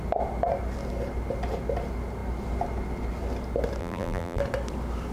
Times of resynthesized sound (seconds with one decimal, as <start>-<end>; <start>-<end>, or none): 3.8-4.4